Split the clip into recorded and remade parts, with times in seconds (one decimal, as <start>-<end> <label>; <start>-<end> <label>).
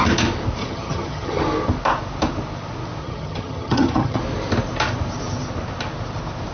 0.0-0.6 recorded; 0.6-1.4 remade; 1.4-3.0 recorded; 3.0-4.2 remade; 4.2-6.5 recorded